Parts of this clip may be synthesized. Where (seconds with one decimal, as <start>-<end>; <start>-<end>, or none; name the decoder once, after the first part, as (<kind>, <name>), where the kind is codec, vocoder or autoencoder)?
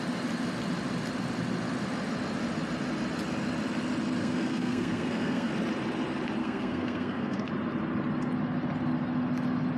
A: 4.2-5.5 (codec, SNAC); 6.4-7.5